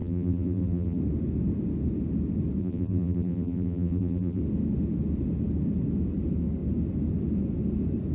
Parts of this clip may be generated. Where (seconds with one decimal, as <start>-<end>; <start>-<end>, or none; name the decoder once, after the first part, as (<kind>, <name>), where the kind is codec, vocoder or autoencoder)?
0.0-1.0 (vocoder, BigVGAN v2); 2.6-4.4